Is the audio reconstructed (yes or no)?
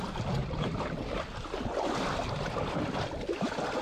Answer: no